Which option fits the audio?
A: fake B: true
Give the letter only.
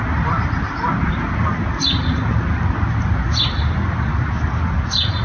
B